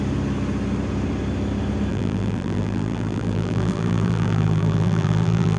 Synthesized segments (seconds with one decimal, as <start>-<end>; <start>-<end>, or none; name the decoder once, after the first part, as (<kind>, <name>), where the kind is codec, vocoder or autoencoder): 1.9-5.6 (vocoder, BigVGAN v2)